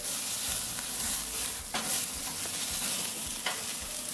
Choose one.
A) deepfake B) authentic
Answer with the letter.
B